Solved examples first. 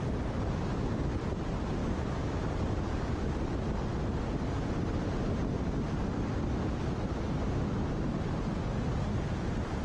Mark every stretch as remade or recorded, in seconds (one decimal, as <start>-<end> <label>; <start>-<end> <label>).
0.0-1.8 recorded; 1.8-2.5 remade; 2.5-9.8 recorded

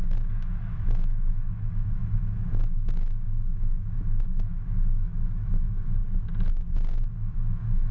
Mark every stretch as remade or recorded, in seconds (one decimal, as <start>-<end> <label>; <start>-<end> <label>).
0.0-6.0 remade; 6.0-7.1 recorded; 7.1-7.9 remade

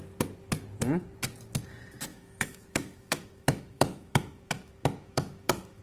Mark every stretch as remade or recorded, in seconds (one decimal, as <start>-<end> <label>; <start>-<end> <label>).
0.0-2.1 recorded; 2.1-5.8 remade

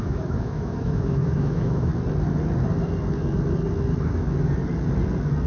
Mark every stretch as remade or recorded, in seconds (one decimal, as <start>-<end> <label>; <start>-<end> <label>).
0.0-1.9 remade; 1.9-5.5 recorded